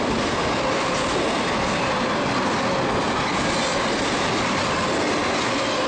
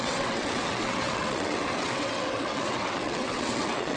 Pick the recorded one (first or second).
first